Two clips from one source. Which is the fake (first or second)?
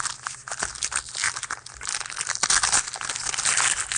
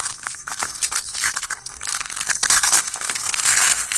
second